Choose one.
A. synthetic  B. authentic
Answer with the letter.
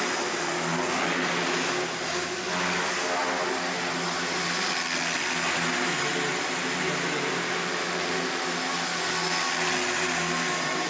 B